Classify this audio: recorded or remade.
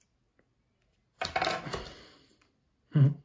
recorded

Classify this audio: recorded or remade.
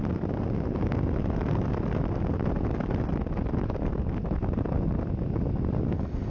recorded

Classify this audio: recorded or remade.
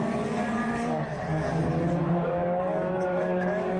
remade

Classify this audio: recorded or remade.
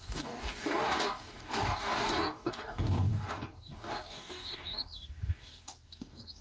remade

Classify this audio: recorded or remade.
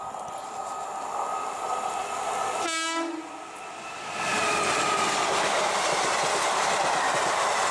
recorded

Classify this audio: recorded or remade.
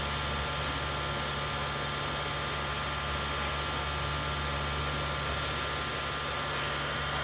recorded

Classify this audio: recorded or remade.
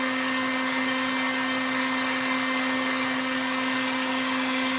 remade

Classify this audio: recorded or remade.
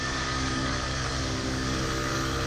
remade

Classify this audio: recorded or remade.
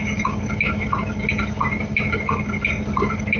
remade